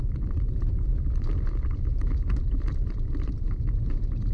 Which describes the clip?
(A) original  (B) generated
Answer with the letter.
B